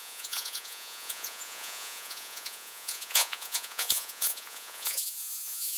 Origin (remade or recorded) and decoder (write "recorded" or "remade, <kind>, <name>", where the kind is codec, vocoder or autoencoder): remade, vocoder, Vocos